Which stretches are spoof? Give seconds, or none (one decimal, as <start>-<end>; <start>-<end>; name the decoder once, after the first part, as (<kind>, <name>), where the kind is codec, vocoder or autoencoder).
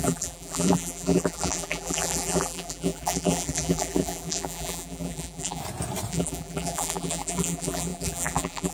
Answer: 0.0-5.6 (vocoder, BigVGAN v2); 6.1-8.7